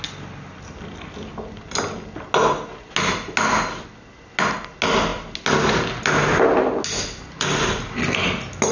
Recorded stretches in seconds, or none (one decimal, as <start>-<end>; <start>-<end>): 0.0-8.7